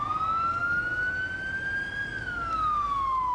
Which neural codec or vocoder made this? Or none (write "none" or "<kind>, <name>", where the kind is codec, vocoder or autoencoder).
none